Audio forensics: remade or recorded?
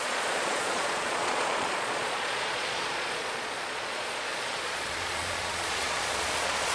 remade